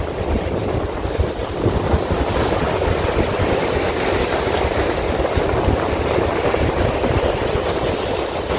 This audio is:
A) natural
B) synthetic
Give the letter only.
A